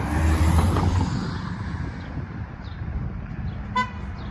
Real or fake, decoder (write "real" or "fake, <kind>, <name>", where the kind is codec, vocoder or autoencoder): real